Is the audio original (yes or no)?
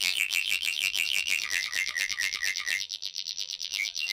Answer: no